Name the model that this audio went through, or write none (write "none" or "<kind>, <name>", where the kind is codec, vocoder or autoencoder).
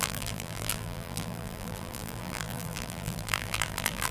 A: vocoder, BigVGAN v2